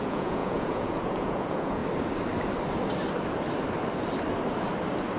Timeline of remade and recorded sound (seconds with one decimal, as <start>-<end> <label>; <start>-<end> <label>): 0.0-1.8 remade; 1.8-5.2 recorded